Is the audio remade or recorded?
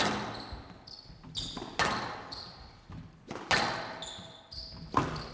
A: recorded